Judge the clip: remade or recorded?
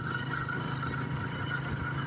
recorded